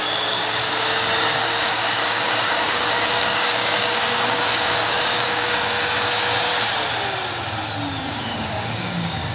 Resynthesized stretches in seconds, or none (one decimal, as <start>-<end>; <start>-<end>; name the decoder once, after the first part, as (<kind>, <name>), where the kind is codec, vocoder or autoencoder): 0.0-6.5 (codec, DAC); 8.1-9.3